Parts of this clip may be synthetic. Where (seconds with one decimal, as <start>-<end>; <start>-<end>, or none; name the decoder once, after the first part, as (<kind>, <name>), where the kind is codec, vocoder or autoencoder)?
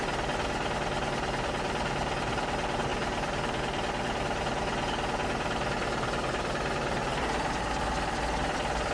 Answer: none